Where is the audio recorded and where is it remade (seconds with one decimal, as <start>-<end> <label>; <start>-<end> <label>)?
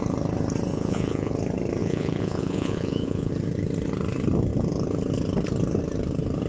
0.0-0.7 recorded; 0.7-1.3 remade; 1.3-1.8 recorded; 1.8-3.3 remade; 3.3-6.5 recorded